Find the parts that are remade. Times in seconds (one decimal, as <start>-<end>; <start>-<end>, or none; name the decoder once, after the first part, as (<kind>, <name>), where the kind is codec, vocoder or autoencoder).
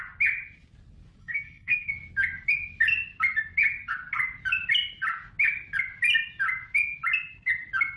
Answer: 1.2-1.9 (codec, SNAC)